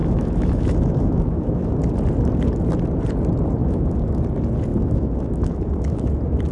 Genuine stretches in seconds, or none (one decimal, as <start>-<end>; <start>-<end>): 1.7-3.6; 4.2-4.7; 6.1-6.5